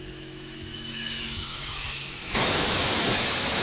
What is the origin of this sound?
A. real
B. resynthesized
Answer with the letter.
B